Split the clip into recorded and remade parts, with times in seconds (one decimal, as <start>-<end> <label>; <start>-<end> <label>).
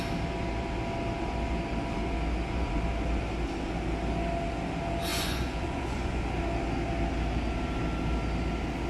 0.0-5.1 recorded; 5.1-6.2 remade; 6.2-8.9 recorded